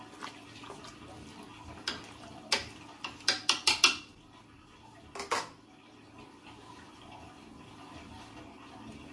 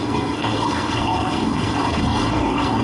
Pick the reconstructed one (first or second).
second